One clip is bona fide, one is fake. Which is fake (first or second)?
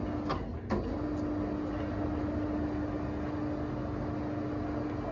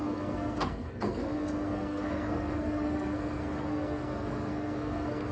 second